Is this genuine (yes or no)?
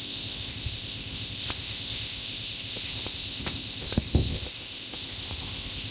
no